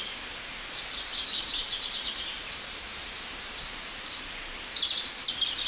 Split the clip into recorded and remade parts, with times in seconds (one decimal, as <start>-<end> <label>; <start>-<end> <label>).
0.0-1.1 recorded; 1.1-4.5 remade; 4.5-5.7 recorded